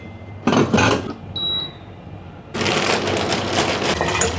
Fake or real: real